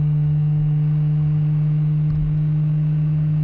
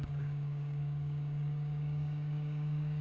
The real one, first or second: first